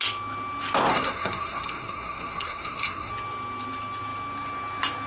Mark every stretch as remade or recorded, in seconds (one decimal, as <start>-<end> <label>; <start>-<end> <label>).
0.0-0.9 recorded; 0.9-3.1 remade; 3.1-5.1 recorded